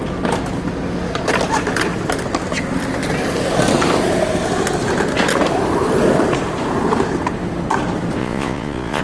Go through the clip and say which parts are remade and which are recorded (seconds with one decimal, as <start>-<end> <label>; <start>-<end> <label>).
0.0-8.2 recorded; 8.2-9.0 remade